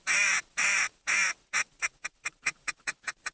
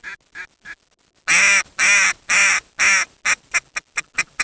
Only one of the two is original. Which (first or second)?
second